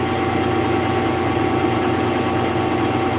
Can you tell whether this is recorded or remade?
recorded